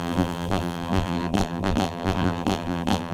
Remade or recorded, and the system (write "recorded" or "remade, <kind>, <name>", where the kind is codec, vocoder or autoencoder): remade, vocoder, BigVGAN v2